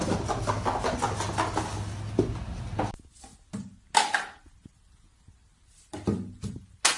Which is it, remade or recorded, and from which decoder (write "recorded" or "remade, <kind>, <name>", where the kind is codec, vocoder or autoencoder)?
recorded